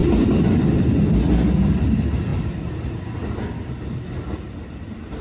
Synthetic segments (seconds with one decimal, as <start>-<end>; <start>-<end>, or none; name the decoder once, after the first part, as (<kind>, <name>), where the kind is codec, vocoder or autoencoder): none